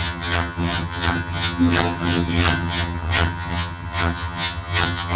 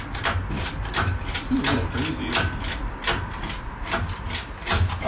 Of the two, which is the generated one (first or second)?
first